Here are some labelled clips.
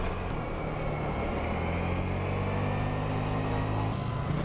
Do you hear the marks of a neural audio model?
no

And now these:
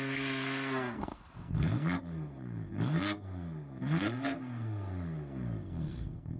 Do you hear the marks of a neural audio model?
yes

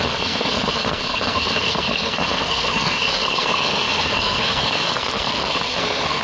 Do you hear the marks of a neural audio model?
yes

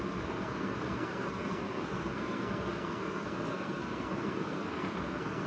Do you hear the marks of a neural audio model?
yes